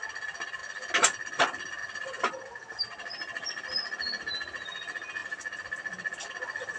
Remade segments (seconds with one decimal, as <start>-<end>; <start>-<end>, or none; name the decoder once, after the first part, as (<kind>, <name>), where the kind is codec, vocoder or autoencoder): none